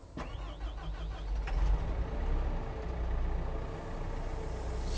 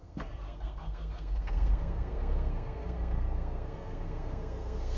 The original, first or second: first